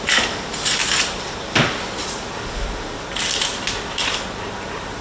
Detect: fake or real real